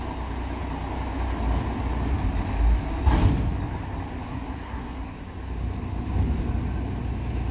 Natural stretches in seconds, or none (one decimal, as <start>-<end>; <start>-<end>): 0.0-4.3; 5.1-7.5

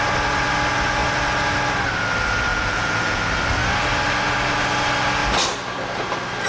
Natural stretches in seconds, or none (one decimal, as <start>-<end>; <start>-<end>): 0.0-2.5; 3.2-6.5